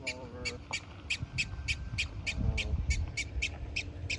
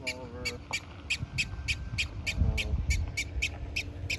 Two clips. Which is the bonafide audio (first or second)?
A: second